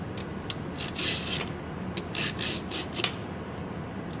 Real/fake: real